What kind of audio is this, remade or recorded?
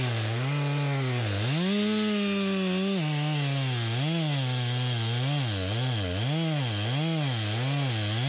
recorded